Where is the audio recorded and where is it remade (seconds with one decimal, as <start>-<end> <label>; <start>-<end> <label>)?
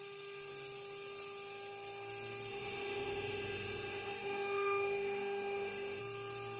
0.0-2.5 recorded; 2.5-6.0 remade; 6.0-6.6 recorded